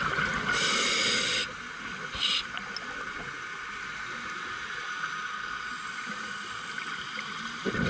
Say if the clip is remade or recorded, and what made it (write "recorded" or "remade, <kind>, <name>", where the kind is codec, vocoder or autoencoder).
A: recorded